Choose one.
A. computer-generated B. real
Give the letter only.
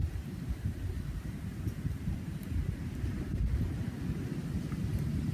A